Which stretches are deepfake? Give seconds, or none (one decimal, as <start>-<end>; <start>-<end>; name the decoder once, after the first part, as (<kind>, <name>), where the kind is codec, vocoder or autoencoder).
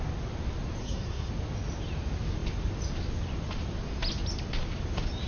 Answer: 0.8-1.3 (codec, SNAC)